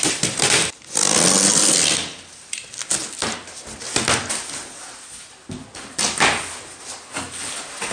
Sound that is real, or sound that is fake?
real